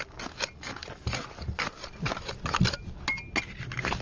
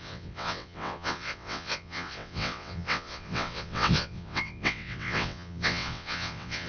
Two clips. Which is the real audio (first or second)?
first